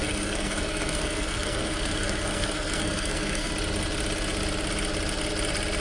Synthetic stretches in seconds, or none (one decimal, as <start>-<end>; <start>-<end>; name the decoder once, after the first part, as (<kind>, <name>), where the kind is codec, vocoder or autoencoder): 0.0-3.5 (codec, SNAC)